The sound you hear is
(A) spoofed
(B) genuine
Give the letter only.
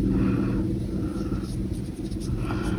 B